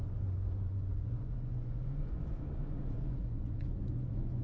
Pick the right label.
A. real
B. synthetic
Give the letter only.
B